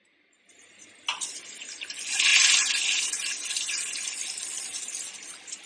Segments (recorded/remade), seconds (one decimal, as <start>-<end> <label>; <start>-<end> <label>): 0.0-5.7 recorded

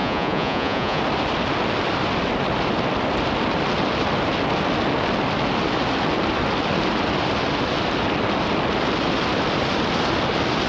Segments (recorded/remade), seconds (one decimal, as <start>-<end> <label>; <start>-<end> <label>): 0.0-1.0 remade; 1.0-10.7 recorded

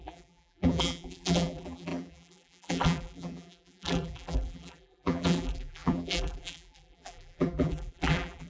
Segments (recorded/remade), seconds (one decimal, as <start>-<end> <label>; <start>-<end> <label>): 0.0-8.5 remade

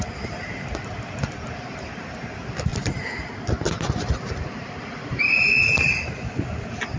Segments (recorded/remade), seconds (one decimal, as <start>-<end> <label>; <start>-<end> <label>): 0.0-2.7 recorded; 2.7-3.7 remade; 3.7-7.0 recorded